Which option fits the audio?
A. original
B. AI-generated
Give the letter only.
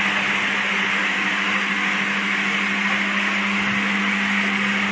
A